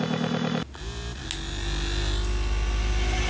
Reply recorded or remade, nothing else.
recorded